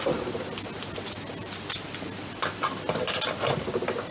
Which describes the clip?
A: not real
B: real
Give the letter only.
B